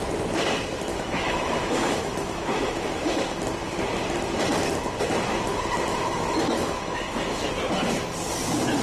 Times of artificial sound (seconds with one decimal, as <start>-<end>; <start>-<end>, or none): 0.9-3.2; 5.9-7.5